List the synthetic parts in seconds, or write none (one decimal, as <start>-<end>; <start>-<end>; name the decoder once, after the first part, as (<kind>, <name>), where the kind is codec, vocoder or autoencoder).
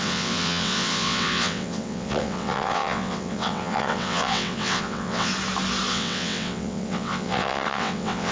0.0-5.3 (vocoder, WaveNeXt); 5.9-8.3